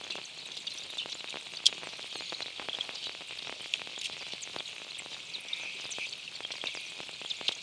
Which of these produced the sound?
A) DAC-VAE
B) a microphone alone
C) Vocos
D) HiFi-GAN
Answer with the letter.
B